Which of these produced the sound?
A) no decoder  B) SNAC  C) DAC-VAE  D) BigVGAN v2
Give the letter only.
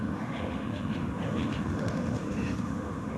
C